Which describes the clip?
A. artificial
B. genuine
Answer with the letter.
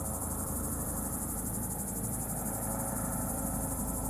A